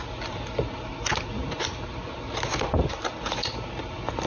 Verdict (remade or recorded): recorded